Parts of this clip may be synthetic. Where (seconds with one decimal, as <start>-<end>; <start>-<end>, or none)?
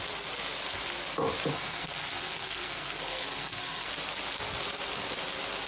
1.5-3.9